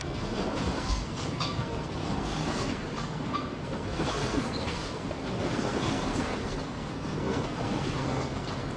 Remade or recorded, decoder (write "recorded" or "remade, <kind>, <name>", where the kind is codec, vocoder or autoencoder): remade, codec, SNAC